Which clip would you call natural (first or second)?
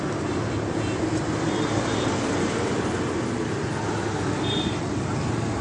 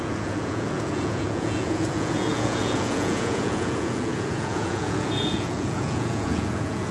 first